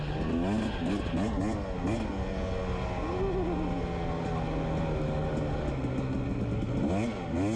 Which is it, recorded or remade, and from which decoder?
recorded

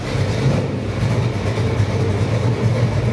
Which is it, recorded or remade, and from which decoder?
recorded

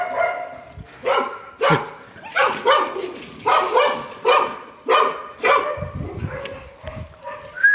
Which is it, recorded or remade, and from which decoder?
recorded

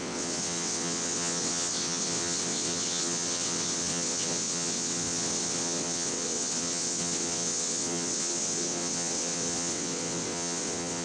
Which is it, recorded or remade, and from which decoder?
remade, vocoder, WaveNeXt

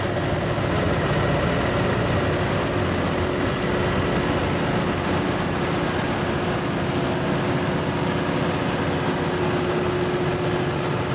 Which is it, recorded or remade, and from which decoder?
recorded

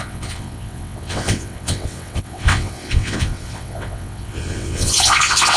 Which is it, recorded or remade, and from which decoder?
remade, vocoder, WaveNeXt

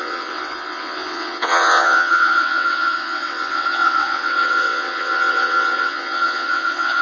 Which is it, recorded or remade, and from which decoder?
remade, vocoder, WaveNeXt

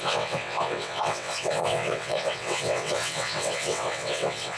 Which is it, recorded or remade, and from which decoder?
remade, vocoder, WaveNeXt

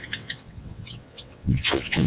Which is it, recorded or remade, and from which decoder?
remade, vocoder, WaveNeXt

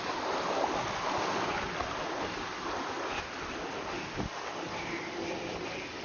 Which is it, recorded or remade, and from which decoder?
recorded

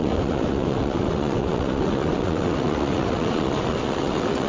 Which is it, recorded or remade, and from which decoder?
remade, vocoder, WaveNeXt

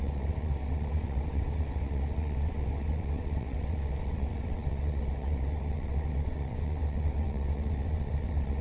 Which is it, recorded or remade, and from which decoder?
remade, vocoder, WaveNeXt